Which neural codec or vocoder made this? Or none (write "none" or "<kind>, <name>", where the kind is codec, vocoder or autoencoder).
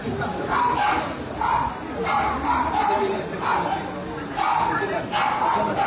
none